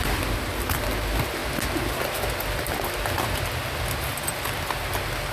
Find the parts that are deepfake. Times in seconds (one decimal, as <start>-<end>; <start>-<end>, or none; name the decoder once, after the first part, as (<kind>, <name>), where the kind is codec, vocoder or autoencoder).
none